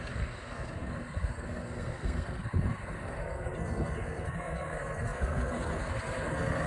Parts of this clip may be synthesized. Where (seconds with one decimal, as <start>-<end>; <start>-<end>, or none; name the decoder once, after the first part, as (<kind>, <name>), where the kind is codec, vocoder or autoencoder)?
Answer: 0.0-6.7 (codec, SNAC)